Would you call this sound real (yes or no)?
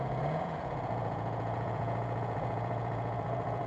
no